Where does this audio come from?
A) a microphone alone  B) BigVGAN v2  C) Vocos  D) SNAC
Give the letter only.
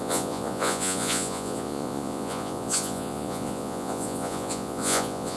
C